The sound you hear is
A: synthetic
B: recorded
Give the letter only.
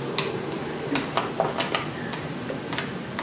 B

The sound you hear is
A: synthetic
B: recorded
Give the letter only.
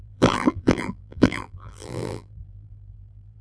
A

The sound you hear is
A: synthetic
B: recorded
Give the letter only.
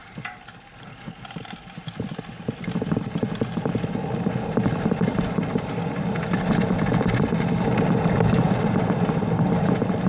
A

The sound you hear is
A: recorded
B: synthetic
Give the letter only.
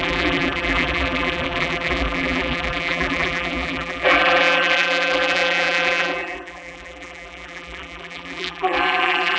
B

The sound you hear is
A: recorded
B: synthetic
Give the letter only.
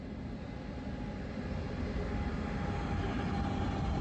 A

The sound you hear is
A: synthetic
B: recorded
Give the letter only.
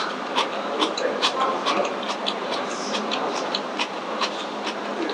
A